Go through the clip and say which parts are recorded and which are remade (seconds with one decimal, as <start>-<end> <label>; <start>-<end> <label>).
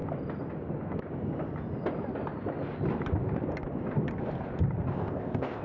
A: 0.0-4.9 recorded; 4.9-5.6 remade